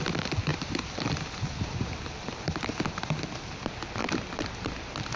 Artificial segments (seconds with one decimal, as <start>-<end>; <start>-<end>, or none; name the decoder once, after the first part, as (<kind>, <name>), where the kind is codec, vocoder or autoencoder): 0.5-2.4 (vocoder, BigVGAN v2); 4.0-4.8